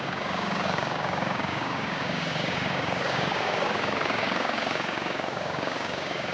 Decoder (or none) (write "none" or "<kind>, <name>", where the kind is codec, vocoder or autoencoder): codec, DAC